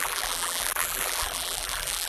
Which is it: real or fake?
fake